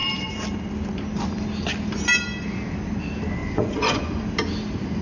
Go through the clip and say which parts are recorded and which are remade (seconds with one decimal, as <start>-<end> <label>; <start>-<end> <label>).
0.0-3.4 recorded; 3.4-4.2 remade; 4.2-5.0 recorded